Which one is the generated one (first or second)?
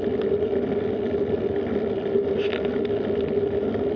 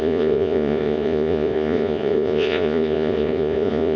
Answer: second